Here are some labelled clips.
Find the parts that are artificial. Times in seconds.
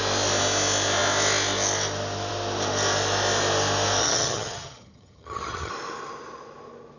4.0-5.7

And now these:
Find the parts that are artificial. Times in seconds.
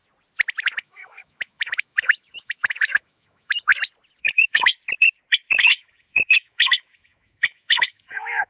0.6-3.7; 4.2-4.7; 5.5-8.5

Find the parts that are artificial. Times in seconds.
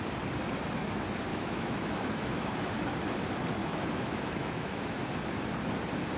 1.3-2.7; 3.6-5.1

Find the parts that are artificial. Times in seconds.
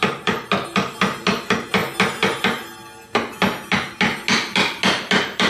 none